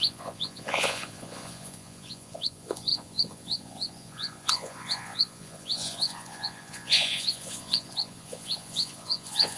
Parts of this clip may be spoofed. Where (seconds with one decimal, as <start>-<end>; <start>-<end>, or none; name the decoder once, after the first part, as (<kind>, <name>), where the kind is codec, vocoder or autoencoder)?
0.0-9.6 (vocoder, Vocos)